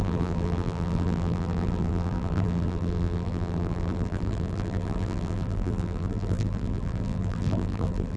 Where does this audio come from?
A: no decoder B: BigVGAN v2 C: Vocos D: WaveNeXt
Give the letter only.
B